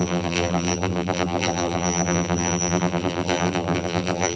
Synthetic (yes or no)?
yes